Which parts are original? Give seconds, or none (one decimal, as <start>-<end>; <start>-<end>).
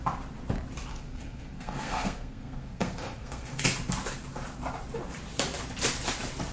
0.0-0.9; 3.6-6.5